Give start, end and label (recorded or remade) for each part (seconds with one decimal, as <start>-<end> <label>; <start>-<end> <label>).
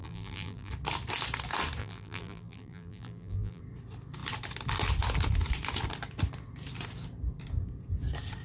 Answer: 0.0-0.7 remade; 0.7-1.8 recorded; 1.8-3.6 remade; 3.6-8.4 recorded